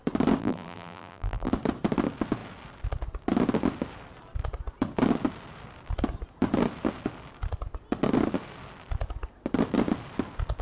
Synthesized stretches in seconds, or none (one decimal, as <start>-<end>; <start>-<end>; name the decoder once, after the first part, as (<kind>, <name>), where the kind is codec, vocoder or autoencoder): 0.4-1.5 (vocoder, BigVGAN v2)

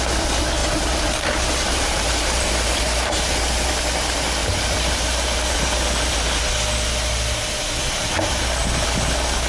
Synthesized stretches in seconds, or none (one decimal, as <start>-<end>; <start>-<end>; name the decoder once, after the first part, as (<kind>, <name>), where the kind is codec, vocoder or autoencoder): 0.6-3.7 (vocoder, BigVGAN v2); 4.4-6.4; 7.8-8.4

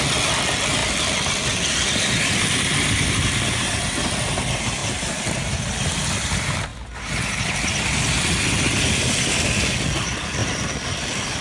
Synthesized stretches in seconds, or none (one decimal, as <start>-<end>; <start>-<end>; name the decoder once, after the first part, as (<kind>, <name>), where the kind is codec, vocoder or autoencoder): 0.8-3.7 (vocoder, BigVGAN v2); 4.8-5.6; 10.4-11.4

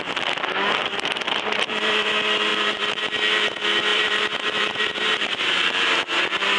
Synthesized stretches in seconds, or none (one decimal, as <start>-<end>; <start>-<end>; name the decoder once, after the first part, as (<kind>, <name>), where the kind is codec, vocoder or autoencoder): 0.8-2.1 (vocoder, BigVGAN v2); 2.5-3.0; 3.9-6.6